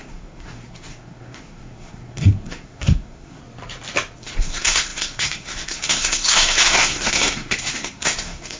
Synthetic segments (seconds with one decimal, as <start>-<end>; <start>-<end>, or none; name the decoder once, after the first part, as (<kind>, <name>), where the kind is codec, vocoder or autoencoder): 0.0-3.4 (codec, SNAC); 4.2-8.6